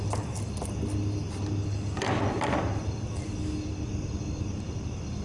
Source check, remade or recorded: recorded